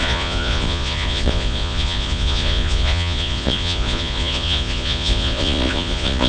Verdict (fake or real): fake